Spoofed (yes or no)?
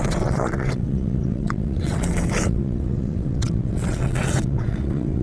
yes